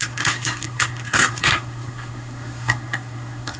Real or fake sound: fake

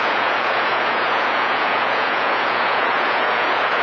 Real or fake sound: fake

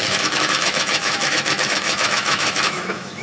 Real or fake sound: fake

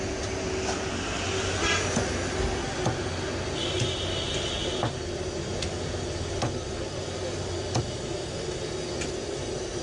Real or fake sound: real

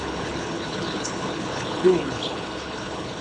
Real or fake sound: fake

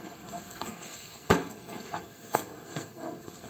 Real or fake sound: fake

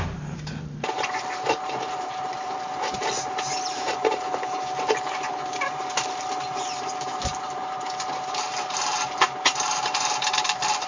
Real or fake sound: fake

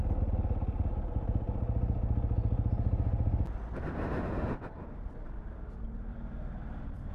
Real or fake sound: real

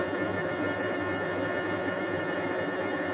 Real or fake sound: fake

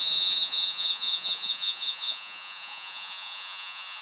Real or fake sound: fake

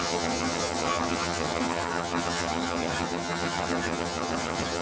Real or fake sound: fake